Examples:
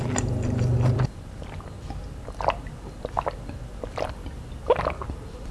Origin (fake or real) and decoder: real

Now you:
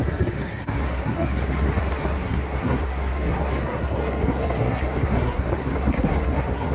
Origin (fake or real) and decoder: fake, codec, SNAC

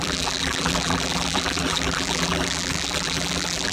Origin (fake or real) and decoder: fake, vocoder, BigVGAN v2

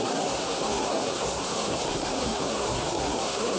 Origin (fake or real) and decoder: fake, codec, SNAC